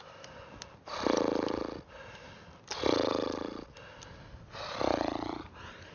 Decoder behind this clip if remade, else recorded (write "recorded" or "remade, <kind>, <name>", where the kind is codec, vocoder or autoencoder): recorded